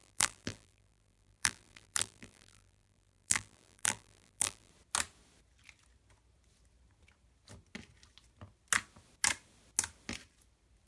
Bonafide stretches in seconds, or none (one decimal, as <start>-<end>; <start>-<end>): 4.7-10.9

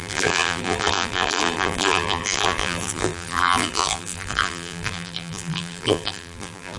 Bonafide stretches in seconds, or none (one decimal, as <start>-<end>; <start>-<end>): none

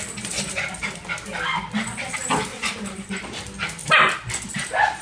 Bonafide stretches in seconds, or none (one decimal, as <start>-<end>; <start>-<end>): 0.0-2.5; 3.1-5.0